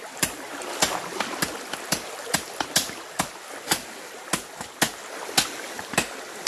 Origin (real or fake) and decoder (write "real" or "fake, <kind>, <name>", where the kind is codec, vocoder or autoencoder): real